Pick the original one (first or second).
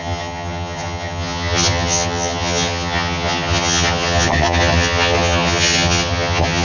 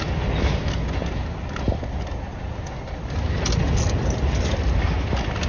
second